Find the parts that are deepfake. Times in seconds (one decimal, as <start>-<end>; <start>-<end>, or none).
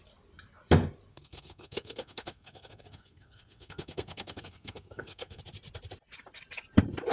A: 1.1-5.4